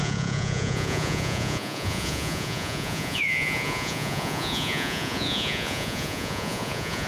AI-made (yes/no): yes